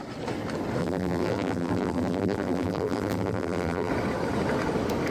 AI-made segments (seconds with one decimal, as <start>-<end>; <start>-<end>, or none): 0.8-3.9